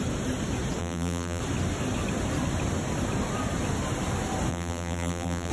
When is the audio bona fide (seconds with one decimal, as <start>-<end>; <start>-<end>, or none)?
0.0-0.8; 1.4-4.5